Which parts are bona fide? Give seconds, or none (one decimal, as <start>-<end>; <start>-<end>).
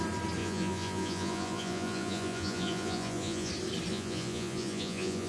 0.0-0.4; 3.5-3.9